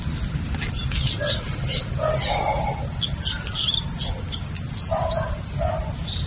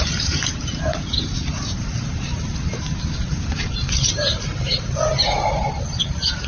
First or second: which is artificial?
second